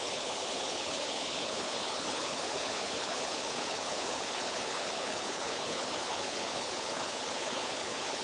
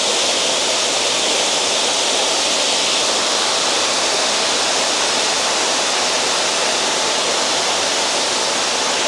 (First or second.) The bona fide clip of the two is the second